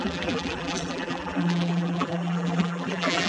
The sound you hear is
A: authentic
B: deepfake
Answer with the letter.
B